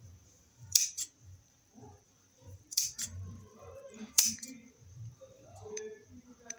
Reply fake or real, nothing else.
fake